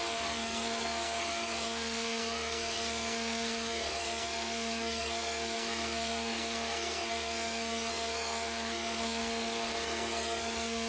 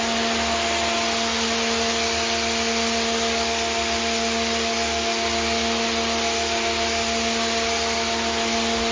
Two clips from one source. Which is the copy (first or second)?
first